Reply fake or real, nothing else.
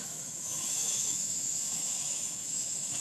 fake